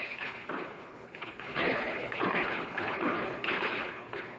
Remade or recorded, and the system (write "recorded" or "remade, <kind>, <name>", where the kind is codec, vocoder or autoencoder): remade, codec, HILCodec